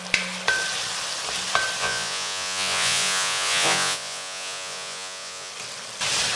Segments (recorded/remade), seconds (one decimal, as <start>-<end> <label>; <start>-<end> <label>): 0.0-1.8 recorded; 1.8-5.5 remade; 5.5-6.4 recorded